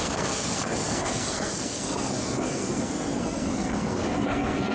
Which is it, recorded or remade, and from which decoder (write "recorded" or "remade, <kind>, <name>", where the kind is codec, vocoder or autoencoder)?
remade, codec, SNAC